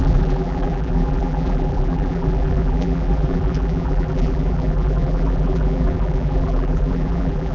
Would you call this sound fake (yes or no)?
yes